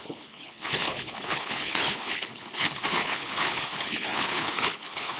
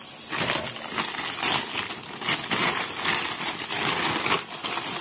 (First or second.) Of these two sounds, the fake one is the first